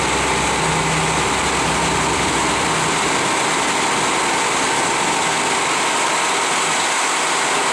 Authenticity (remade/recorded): recorded